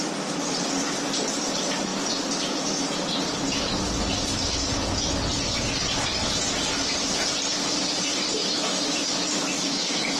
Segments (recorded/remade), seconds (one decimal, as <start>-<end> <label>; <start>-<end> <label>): 0.0-8.4 recorded; 8.4-10.2 remade